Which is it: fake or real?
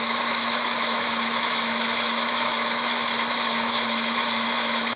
fake